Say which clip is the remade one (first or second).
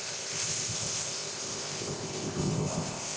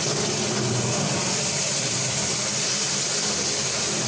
first